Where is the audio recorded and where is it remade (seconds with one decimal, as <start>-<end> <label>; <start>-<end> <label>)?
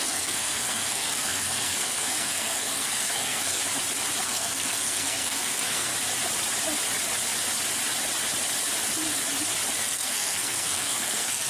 0.0-3.6 remade; 3.6-4.2 recorded; 4.2-5.9 remade; 5.9-9.8 recorded; 9.8-11.5 remade